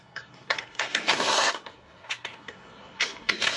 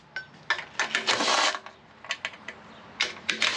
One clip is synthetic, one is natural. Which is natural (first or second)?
second